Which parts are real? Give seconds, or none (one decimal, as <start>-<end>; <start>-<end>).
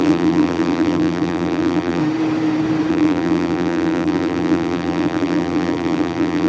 2.0-2.9